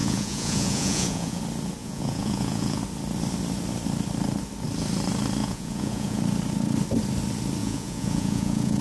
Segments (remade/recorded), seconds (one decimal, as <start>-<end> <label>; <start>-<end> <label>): 0.0-1.4 remade; 1.4-1.8 recorded; 1.8-2.8 remade; 2.8-5.4 recorded; 5.4-6.2 remade; 6.2-7.6 recorded; 7.6-8.8 remade